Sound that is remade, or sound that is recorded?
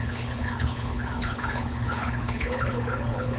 remade